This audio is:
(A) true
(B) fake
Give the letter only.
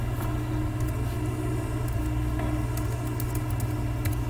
A